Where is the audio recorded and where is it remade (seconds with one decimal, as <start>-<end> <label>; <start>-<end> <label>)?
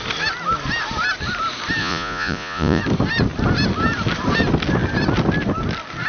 0.0-1.8 recorded; 1.8-2.8 remade; 2.8-6.1 recorded